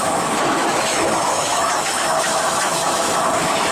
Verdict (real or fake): fake